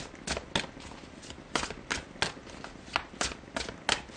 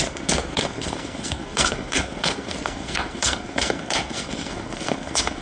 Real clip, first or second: first